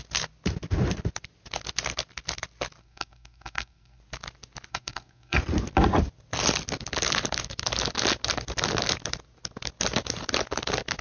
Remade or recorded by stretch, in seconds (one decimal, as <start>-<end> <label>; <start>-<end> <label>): 0.0-2.8 recorded; 2.8-4.0 remade; 4.0-4.7 recorded; 4.7-5.4 remade; 5.4-11.0 recorded